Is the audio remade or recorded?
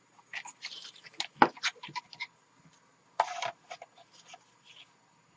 recorded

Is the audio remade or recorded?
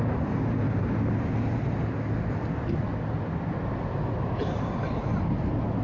recorded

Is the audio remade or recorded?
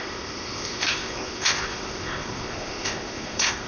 remade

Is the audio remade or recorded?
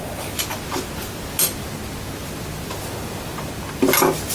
recorded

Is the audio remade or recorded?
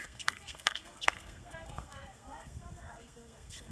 remade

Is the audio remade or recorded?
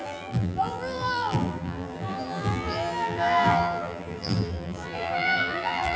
remade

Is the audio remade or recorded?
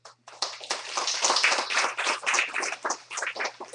recorded